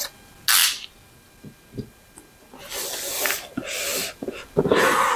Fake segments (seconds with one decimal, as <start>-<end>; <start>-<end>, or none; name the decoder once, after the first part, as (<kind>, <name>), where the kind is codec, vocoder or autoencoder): none